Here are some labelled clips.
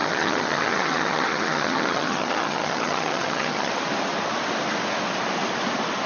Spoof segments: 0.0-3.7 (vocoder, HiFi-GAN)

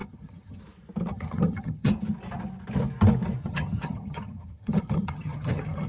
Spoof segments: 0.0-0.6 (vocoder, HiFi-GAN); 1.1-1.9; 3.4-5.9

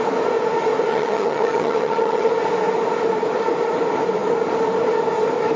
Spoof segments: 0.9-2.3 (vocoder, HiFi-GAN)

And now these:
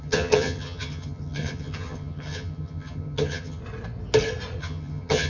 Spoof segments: 0.0-3.6 (vocoder, HiFi-GAN); 4.6-5.3